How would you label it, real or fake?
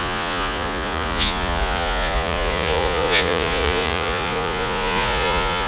fake